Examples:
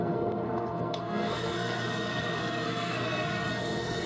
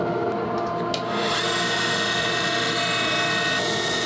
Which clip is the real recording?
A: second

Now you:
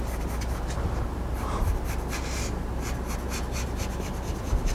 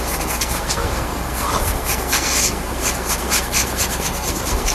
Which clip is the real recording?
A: first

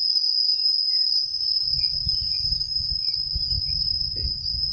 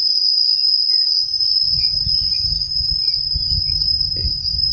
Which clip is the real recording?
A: second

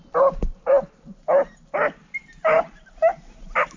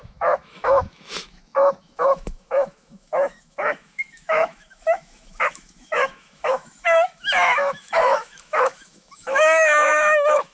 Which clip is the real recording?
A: first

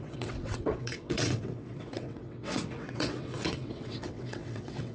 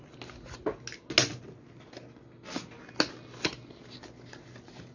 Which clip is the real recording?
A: second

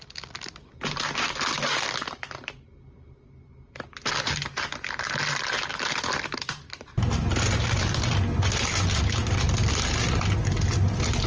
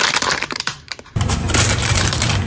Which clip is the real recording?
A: first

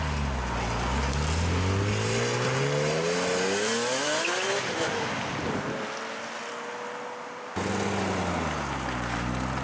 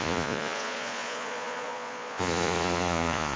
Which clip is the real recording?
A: first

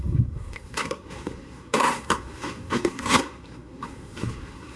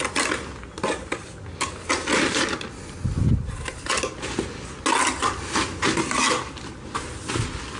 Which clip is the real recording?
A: second